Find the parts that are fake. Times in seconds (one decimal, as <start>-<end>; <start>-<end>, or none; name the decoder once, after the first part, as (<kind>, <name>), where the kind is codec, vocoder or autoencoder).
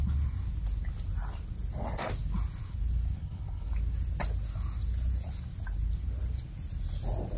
3.2-3.7 (codec, HILCodec)